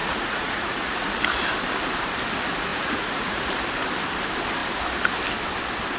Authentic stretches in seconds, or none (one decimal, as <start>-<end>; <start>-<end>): 1.1-2.7; 3.5-6.0